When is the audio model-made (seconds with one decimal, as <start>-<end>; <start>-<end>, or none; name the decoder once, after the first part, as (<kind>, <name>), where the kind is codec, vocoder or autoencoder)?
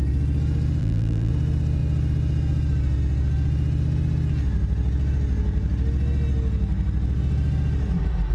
0.8-1.3 (vocoder, BigVGAN v2)